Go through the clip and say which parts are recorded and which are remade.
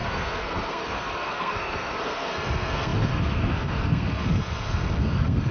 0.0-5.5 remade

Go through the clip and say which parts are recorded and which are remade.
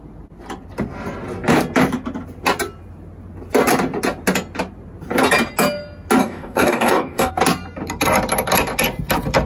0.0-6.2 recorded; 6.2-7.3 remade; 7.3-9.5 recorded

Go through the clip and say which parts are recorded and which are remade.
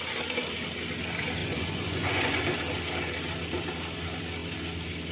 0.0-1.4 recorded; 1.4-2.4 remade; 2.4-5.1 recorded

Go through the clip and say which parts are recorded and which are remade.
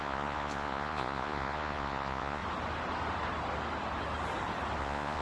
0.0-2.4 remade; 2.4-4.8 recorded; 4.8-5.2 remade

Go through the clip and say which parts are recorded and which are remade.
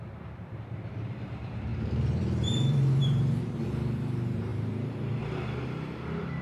0.0-6.4 remade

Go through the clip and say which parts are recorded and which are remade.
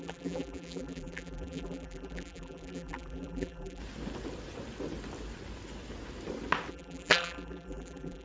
0.0-3.8 remade; 3.8-6.7 recorded; 6.7-8.2 remade